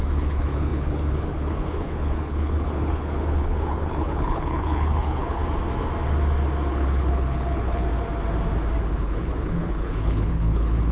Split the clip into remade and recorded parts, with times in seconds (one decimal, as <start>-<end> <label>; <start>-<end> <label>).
0.0-5.4 remade; 5.4-6.7 recorded; 6.7-7.9 remade; 7.9-8.8 recorded; 8.8-10.9 remade